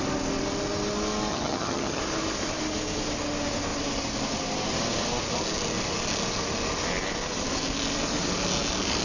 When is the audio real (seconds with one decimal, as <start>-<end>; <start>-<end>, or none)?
0.0-1.3; 2.0-9.0